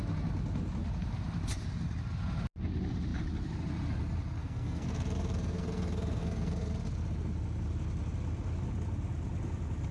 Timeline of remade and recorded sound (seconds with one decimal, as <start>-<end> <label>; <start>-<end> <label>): 0.0-4.4 recorded; 4.4-6.7 remade; 6.7-9.9 recorded

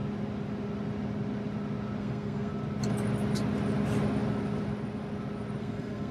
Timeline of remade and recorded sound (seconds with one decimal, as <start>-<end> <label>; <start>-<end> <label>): 0.0-2.0 recorded; 2.0-2.5 remade; 2.5-5.6 recorded; 5.6-6.1 remade

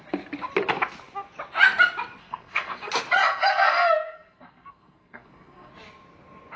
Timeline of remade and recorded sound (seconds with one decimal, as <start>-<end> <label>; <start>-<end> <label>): 0.0-2.2 recorded; 2.2-2.9 remade; 2.9-3.5 recorded; 3.5-5.7 remade; 5.7-6.6 recorded

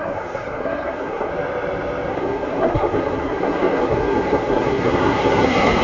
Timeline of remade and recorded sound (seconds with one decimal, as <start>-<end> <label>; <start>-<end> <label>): 0.0-1.3 remade; 1.3-2.1 recorded; 2.1-5.8 remade

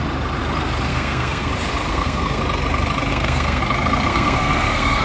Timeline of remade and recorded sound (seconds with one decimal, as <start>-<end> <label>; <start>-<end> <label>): 0.0-0.9 recorded; 0.9-1.5 remade; 1.5-1.9 recorded; 1.9-2.4 remade; 2.4-3.1 recorded; 3.1-3.6 remade; 3.6-4.1 recorded; 4.1-5.0 remade

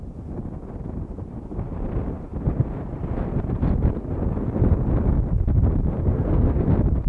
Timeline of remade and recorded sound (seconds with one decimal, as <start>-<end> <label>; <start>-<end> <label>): 0.0-6.1 recorded; 6.1-6.6 remade; 6.6-7.1 recorded

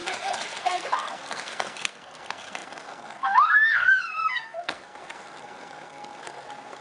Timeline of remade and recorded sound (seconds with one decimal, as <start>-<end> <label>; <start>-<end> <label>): 0.0-6.8 remade